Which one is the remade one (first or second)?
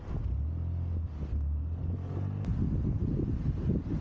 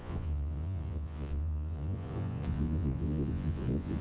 second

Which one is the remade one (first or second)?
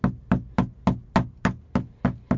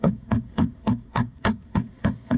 second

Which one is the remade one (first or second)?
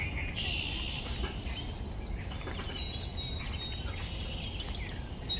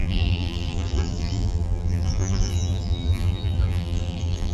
second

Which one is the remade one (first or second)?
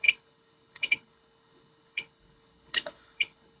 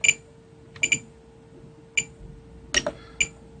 first